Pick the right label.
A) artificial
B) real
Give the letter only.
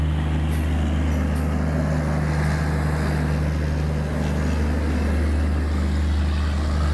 B